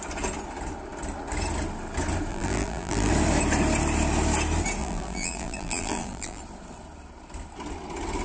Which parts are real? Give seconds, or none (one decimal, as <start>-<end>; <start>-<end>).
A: 0.0-2.3; 3.1-4.8; 6.4-8.2